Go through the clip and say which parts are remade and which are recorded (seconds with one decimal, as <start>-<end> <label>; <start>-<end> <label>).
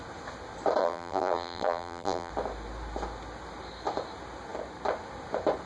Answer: 0.0-0.8 recorded; 0.8-2.3 remade; 2.3-5.7 recorded